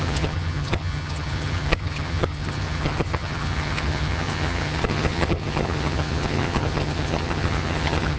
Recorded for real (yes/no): no